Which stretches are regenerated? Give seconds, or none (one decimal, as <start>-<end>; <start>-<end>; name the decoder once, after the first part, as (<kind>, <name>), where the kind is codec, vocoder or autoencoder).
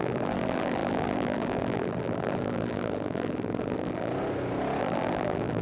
0.0-4.1 (vocoder, BigVGAN v2); 4.8-5.6